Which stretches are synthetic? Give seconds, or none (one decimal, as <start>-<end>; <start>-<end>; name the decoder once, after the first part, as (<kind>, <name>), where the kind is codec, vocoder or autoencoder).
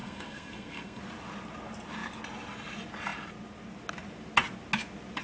0.0-1.0 (codec, SNAC)